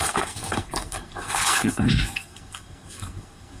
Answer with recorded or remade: remade